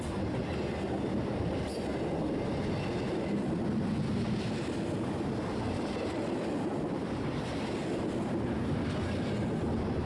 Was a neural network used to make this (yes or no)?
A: no